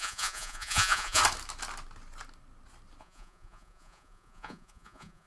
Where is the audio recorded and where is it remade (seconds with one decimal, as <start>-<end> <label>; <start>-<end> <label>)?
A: 0.0-1.2 remade; 1.2-3.0 recorded; 3.0-5.3 remade